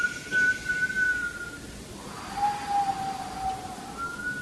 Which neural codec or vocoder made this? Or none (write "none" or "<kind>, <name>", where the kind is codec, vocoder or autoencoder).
none